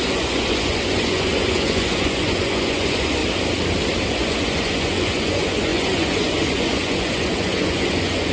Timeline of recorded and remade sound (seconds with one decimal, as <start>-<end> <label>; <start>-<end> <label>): 0.0-3.2 remade; 3.2-4.1 recorded; 4.1-8.3 remade